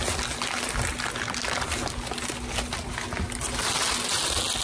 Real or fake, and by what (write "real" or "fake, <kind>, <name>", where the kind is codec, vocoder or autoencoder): real